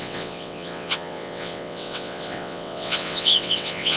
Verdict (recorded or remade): remade